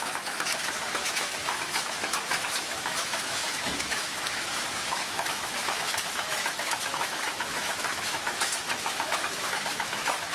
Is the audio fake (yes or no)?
yes